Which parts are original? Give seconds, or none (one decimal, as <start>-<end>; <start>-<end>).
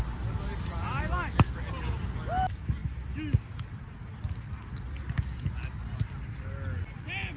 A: 0.0-7.4